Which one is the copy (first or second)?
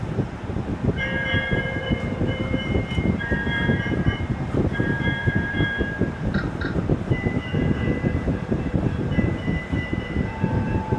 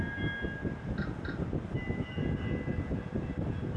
first